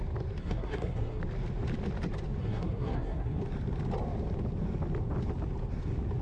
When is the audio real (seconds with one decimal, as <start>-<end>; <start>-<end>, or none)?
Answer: 0.0-0.4; 1.2-2.4; 3.4-6.2